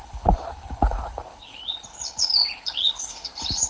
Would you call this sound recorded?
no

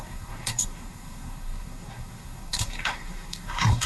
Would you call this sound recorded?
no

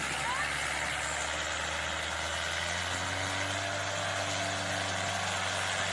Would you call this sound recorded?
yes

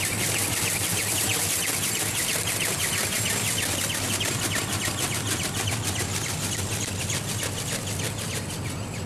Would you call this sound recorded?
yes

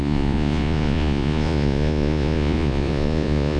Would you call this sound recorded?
no